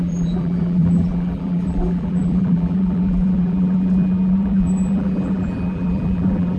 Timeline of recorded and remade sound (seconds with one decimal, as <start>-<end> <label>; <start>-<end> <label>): 0.0-6.6 remade